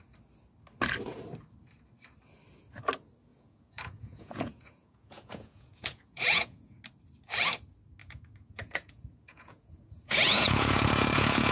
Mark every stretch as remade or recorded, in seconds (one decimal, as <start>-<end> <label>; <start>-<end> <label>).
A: 0.0-3.3 recorded; 3.3-6.8 remade; 6.8-8.0 recorded; 8.0-11.5 remade